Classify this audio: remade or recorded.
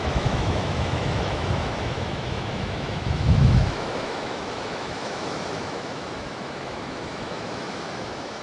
remade